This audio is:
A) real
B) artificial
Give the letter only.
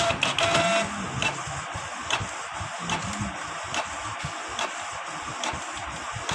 A